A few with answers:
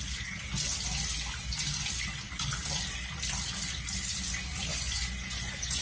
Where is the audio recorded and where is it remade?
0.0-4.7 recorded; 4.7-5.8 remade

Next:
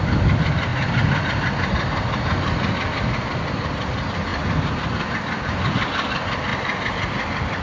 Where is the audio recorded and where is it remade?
0.0-7.6 recorded